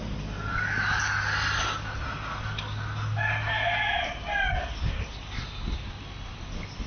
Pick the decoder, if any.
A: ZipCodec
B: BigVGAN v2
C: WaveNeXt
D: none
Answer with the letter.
D